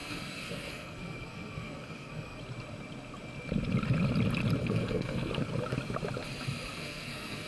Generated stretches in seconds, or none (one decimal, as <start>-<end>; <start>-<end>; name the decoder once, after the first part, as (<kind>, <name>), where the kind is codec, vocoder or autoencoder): 0.0-2.4 (codec, SNAC); 4.6-5.3; 6.7-7.5